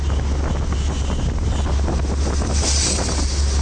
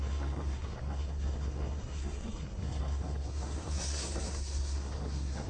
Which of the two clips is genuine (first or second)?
first